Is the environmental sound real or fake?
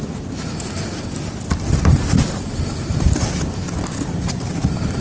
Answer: real